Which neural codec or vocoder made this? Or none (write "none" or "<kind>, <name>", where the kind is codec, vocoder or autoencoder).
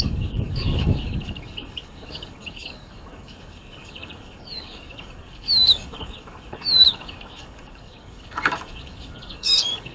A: codec, DAC